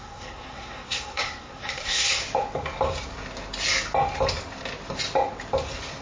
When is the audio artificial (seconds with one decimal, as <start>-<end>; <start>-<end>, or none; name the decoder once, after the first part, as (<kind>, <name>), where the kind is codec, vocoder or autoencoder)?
0.0-2.2 (codec, SNAC)